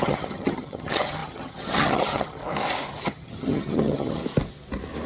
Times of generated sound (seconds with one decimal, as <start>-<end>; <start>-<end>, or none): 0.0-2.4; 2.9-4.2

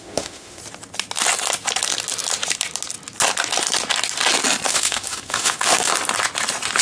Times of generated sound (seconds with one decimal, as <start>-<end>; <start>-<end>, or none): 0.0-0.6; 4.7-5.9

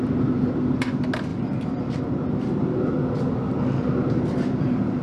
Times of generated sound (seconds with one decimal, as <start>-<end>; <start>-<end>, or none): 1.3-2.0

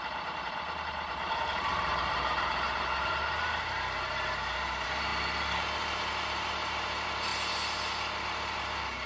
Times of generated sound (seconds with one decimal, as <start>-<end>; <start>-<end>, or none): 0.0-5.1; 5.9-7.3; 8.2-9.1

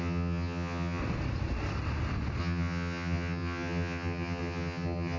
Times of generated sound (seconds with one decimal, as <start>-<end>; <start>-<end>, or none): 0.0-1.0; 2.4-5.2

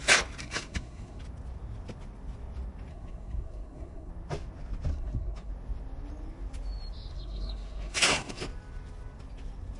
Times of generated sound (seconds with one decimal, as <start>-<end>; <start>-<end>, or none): 0.4-1.2; 2.9-4.1; 4.9-5.5; 7.1-8.4